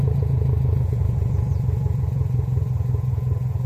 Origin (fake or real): fake